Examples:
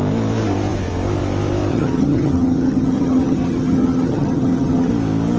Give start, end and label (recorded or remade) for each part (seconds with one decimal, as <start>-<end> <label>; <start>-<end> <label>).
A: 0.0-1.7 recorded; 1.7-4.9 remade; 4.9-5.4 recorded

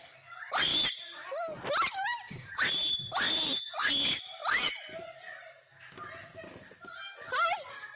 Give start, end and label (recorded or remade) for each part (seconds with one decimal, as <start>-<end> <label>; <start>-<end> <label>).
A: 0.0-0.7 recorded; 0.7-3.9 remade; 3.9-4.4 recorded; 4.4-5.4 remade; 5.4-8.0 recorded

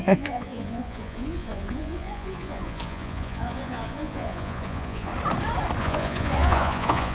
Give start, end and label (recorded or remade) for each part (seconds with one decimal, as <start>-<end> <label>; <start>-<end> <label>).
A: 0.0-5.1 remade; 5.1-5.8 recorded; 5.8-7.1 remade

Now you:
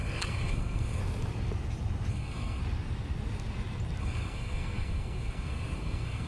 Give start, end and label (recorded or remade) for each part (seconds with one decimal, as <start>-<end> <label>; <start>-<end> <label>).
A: 0.0-1.0 remade; 1.0-2.1 recorded; 2.1-2.6 remade; 2.6-4.0 recorded; 4.0-6.3 remade